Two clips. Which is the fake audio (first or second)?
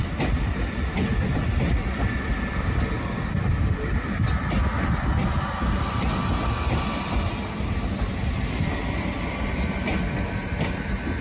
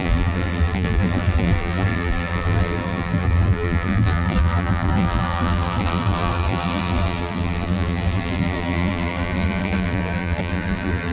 second